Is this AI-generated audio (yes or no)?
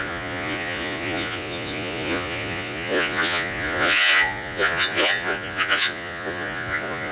yes